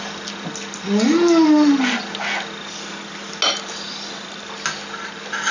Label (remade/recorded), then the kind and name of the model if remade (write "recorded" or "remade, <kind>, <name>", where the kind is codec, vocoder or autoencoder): recorded